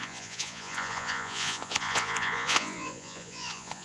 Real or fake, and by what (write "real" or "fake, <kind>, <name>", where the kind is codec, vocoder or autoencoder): fake, vocoder, Vocos